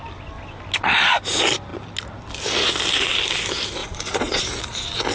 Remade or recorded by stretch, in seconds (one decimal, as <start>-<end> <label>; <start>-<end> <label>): 0.0-3.8 recorded; 3.8-4.4 remade; 4.4-5.1 recorded